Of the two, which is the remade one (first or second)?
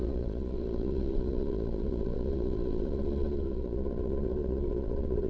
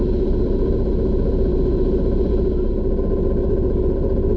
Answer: first